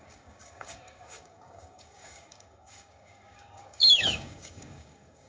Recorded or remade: remade